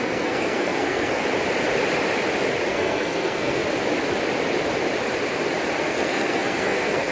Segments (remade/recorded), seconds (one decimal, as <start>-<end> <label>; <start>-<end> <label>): 0.0-1.2 remade; 1.2-2.7 recorded; 2.7-3.6 remade; 3.6-5.8 recorded; 5.8-7.1 remade